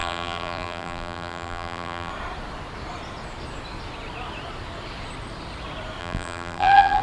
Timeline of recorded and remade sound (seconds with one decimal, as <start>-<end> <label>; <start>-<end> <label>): 0.0-2.1 remade; 2.1-6.0 recorded; 6.0-7.0 remade